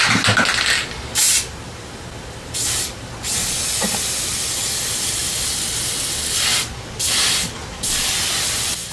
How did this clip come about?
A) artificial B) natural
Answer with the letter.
B